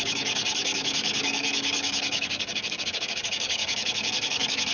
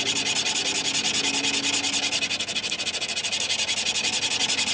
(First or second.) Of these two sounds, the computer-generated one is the first